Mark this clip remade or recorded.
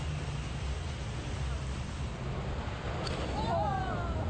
recorded